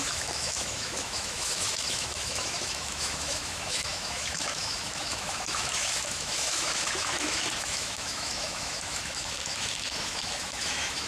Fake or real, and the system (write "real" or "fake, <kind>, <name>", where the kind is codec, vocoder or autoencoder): fake, autoencoder, DAC-VAE